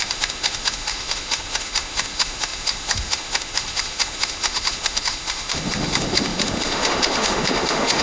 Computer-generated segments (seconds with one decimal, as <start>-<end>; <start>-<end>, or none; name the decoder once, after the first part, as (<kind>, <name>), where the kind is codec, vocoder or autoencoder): 0.0-8.0 (autoencoder, DAC-VAE)

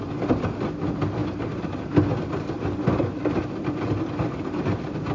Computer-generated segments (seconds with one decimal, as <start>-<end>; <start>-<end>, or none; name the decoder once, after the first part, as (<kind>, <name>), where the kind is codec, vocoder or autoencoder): none

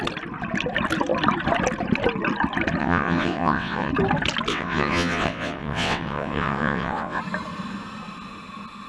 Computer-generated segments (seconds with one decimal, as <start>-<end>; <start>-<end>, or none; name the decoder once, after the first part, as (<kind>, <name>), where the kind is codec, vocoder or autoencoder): 2.8-3.9 (vocoder, WaveNeXt); 4.5-7.2